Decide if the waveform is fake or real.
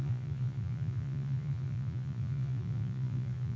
fake